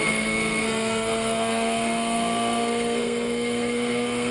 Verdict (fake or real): fake